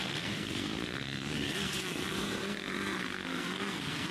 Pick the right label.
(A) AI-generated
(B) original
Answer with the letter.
A